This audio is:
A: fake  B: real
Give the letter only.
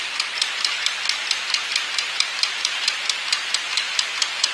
B